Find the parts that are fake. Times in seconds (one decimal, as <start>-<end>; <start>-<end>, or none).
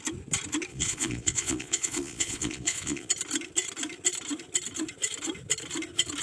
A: 0.7-3.1